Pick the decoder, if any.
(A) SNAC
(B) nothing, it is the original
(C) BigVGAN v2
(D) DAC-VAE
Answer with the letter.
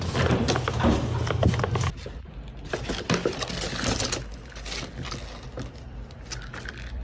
B